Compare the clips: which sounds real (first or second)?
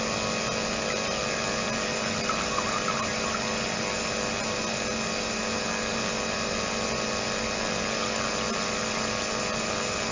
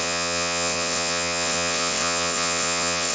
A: first